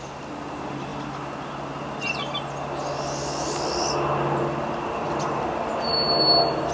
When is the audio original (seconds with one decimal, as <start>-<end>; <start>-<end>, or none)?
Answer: 0.0-6.7